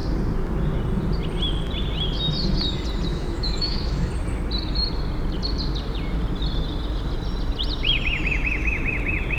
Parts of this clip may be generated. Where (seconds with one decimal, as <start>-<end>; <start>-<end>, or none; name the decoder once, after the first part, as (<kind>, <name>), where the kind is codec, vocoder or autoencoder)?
3.1-4.1 (autoencoder, DAC-VAE)